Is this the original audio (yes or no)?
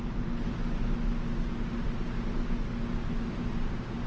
yes